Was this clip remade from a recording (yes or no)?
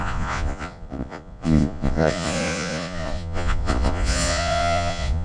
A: yes